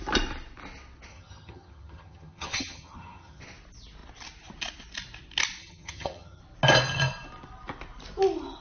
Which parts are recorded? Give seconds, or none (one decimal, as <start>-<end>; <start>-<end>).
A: 0.0-1.1; 3.4-5.6; 6.4-8.6